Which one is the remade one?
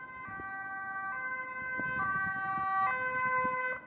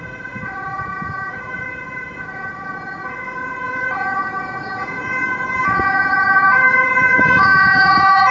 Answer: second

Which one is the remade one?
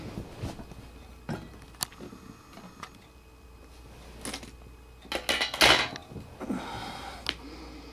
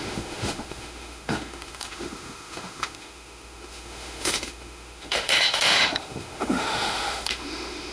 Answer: second